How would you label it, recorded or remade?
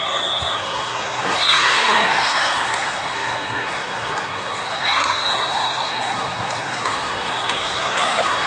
remade